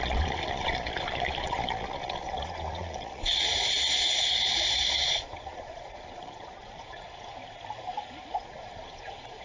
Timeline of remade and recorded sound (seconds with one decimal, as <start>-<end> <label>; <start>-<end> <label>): 0.0-7.4 remade; 7.4-8.3 recorded; 8.3-9.4 remade